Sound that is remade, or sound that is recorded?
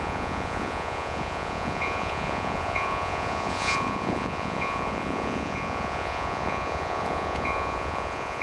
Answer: remade